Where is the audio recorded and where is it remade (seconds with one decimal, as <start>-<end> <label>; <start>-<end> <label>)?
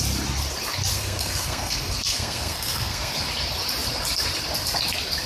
0.0-0.9 recorded; 0.9-3.1 remade; 3.1-5.3 recorded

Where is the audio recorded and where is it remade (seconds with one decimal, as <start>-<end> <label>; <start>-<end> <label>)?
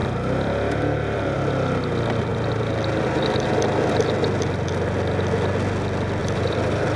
0.0-1.5 remade; 1.5-6.2 recorded; 6.2-7.0 remade